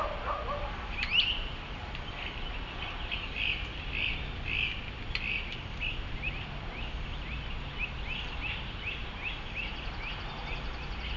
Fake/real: real